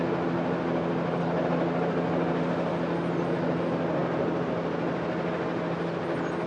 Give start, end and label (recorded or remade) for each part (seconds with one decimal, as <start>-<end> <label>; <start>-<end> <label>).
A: 0.0-6.5 recorded